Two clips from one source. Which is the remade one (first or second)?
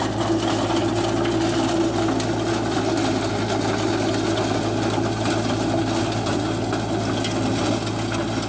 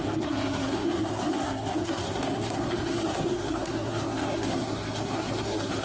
second